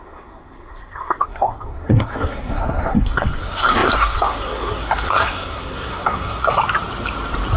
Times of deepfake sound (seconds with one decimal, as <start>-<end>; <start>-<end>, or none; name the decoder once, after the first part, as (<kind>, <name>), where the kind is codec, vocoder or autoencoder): 0.0-6.6 (codec, SNAC)